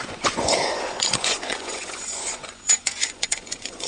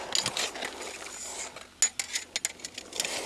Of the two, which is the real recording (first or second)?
second